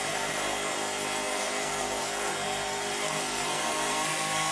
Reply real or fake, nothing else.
fake